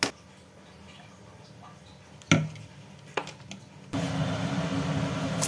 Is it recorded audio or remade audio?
recorded